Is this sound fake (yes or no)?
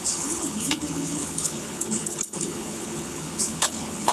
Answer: yes